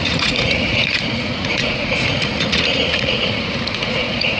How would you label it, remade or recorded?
remade